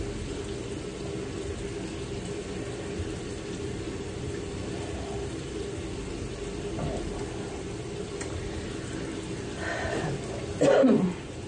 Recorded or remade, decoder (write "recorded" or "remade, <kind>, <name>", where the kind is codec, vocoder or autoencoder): recorded